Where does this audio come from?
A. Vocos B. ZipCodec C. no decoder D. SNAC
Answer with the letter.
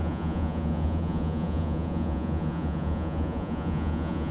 A